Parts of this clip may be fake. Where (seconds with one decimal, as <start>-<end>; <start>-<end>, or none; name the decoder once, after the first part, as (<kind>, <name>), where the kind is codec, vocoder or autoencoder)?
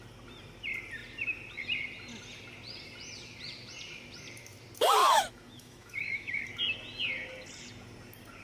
5.0-6.4 (autoencoder, DAC-VAE)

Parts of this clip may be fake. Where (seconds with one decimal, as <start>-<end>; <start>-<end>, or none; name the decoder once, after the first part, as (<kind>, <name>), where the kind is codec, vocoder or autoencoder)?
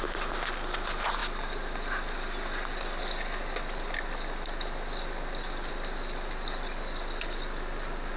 none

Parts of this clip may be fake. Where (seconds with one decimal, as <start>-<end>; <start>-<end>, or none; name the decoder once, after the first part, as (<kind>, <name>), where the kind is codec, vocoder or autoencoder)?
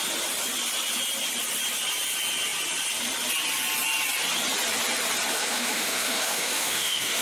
5.3-7.2 (autoencoder, DAC-VAE)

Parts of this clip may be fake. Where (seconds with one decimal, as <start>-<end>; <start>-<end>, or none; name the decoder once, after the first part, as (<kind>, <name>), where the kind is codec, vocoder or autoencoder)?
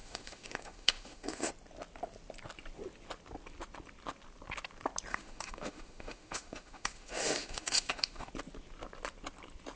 0.0-1.5 (autoencoder, DAC-VAE); 5.1-8.3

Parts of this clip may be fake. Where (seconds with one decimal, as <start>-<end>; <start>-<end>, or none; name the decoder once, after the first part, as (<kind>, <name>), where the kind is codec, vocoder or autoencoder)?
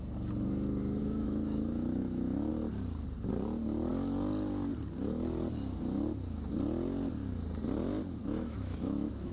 1.0-2.5 (autoencoder, DAC-VAE); 8.2-9.3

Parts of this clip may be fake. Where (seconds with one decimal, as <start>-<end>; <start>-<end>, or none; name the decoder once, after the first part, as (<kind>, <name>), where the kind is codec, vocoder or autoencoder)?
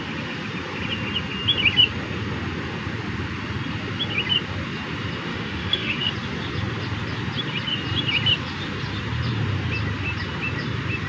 5.3-6.1 (autoencoder, DAC-VAE)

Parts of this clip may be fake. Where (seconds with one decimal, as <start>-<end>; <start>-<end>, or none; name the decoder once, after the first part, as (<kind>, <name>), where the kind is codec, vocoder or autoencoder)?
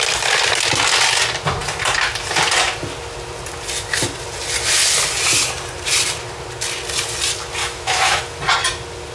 7.6-8.2 (autoencoder, DAC-VAE)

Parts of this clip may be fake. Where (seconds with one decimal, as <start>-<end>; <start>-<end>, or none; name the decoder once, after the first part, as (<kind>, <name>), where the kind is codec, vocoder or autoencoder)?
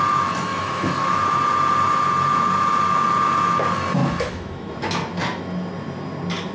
0.5-1.2 (autoencoder, DAC-VAE); 4.0-4.7